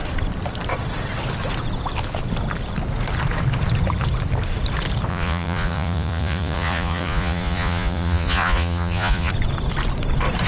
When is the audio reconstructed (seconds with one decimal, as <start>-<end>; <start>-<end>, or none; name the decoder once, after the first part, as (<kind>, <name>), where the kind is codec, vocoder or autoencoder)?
5.1-9.3 (vocoder, Vocos)